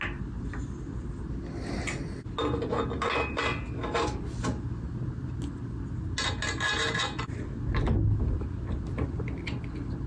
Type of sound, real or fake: real